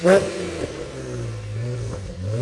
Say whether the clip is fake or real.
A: fake